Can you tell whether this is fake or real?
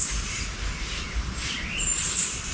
real